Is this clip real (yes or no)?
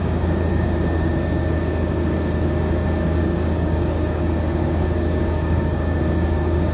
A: no